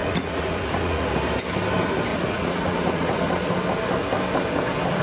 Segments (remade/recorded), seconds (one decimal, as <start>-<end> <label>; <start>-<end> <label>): 0.0-1.1 remade; 1.1-2.1 recorded; 2.1-3.5 remade; 3.5-5.0 recorded